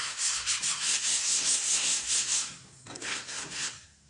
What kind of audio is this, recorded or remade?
remade